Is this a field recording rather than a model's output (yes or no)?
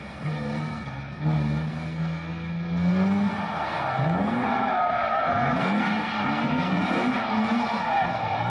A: no